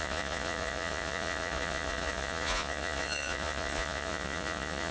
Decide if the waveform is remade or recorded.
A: remade